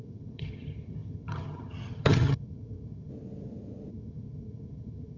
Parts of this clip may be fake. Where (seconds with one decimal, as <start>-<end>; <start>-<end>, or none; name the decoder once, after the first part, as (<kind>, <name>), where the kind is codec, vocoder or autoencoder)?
0.0-3.1 (vocoder, HiFi-GAN); 3.9-5.2